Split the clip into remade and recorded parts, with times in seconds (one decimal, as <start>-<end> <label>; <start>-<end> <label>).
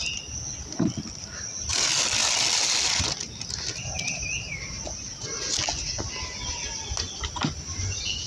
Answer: 0.0-8.3 recorded